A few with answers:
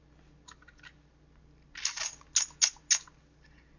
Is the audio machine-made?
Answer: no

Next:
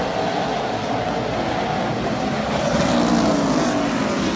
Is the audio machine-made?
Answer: no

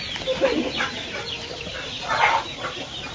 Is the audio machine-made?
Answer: no